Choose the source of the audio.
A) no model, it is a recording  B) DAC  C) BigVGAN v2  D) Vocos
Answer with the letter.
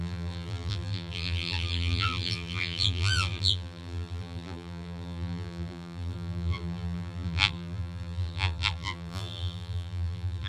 C